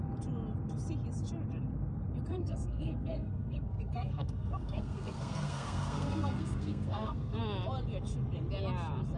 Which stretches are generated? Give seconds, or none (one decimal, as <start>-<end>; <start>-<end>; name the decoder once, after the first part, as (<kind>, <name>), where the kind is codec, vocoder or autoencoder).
2.3-7.4 (codec, SNAC)